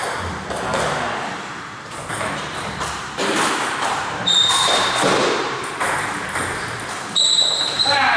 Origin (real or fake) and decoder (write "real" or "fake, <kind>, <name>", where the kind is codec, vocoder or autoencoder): fake, vocoder, BigVGAN v2